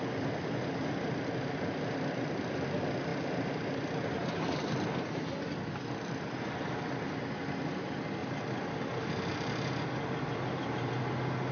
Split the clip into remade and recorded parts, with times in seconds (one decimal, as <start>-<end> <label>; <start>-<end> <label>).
0.0-11.5 recorded